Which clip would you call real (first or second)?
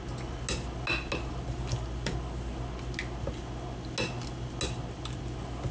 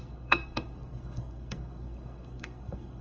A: first